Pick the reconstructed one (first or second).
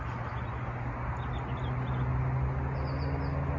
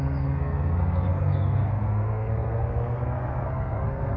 second